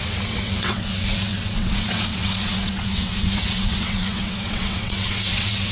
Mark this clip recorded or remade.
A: remade